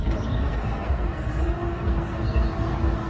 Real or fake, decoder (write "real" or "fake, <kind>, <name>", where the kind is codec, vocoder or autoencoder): fake, codec, SNAC